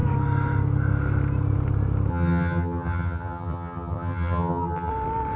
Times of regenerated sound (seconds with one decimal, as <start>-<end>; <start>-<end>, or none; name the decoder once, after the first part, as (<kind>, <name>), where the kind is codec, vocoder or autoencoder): 2.1-4.9 (vocoder, HiFi-GAN)